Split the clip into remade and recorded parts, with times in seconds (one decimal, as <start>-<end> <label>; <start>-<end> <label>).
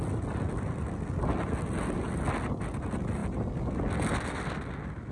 0.0-5.1 recorded